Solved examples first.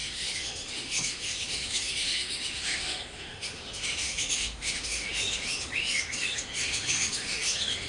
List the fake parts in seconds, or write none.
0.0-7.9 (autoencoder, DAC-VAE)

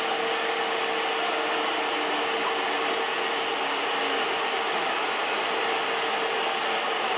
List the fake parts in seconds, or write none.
4.8-5.4 (autoencoder, DAC-VAE)

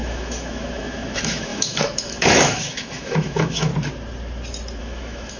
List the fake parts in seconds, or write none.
0.0-3.7 (autoencoder, DAC-VAE); 4.8-5.4

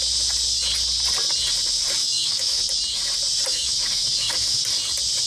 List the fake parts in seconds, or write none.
2.0-2.6 (autoencoder, DAC-VAE); 3.5-4.6

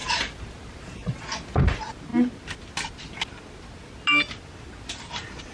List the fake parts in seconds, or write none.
none

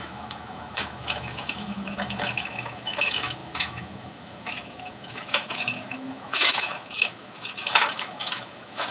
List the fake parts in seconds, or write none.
0.0-8.9 (autoencoder, DAC-VAE)